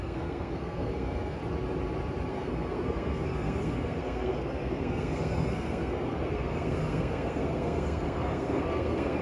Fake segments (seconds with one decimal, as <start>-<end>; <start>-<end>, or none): 0.0-1.4; 2.3-9.2